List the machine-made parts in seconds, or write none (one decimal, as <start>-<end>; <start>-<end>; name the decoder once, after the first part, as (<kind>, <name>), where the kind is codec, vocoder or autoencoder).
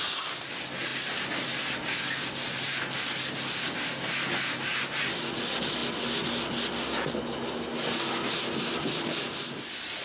none